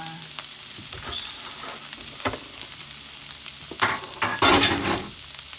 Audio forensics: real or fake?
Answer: real